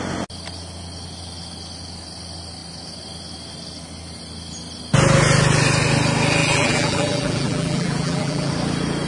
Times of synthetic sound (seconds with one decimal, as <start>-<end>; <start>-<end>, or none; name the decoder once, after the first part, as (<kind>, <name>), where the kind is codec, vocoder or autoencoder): 6.4-8.5 (vocoder, BigVGAN v2)